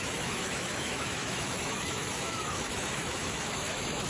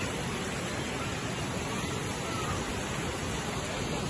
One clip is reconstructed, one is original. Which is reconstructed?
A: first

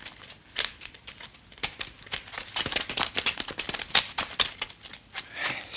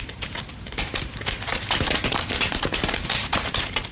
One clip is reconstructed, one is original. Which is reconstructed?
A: second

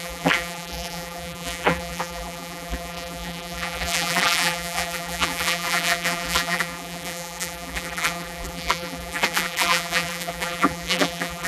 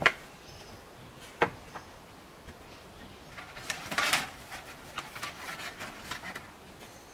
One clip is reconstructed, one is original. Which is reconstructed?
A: first